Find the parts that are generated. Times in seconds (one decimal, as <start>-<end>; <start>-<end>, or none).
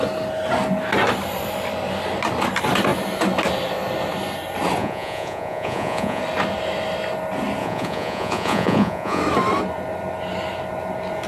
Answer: 4.8-6.2; 7.6-9.2